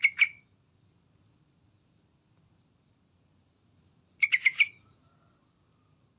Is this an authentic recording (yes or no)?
yes